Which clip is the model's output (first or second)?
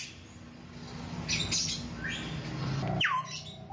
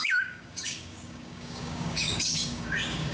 second